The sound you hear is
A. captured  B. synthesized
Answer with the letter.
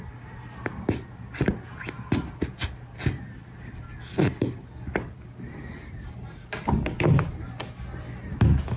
A